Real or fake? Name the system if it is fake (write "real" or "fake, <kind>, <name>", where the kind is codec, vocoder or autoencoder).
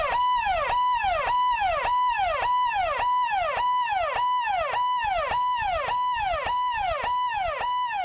real